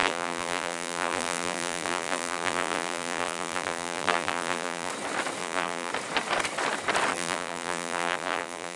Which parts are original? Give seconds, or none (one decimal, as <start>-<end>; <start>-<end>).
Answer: 4.9-5.4; 5.9-7.1